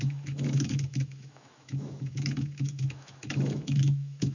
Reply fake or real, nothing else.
fake